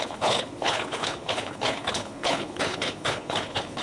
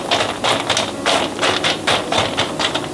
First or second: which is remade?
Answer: first